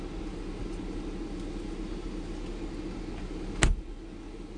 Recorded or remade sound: recorded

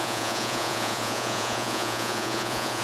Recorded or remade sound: remade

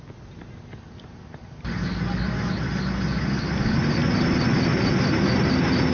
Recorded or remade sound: recorded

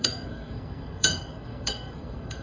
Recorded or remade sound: remade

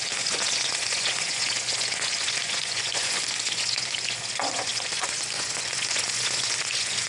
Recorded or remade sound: remade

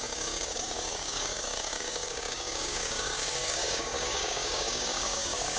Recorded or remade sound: remade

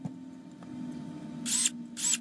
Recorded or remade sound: recorded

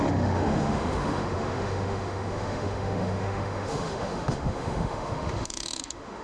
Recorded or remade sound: remade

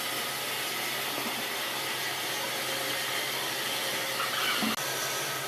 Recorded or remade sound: recorded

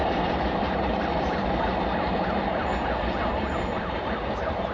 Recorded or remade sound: remade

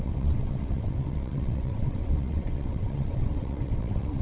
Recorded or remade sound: remade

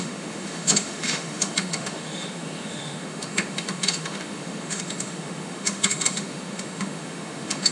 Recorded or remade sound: remade